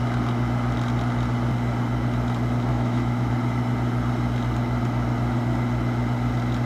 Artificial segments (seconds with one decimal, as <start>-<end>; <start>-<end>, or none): 2.7-3.3